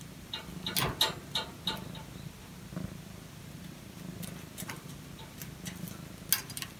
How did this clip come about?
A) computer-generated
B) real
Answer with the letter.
B